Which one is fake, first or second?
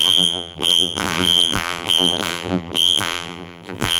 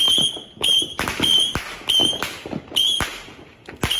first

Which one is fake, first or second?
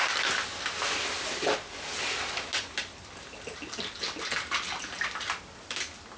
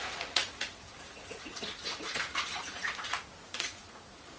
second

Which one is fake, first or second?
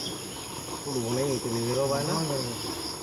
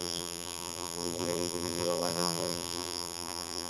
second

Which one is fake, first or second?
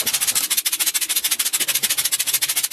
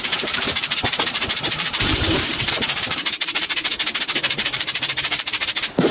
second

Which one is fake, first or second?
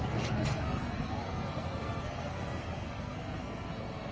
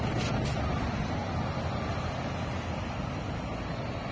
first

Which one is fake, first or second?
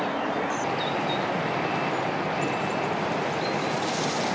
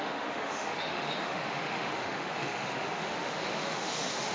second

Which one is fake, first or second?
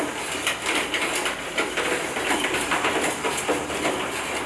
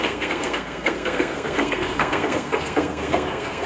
second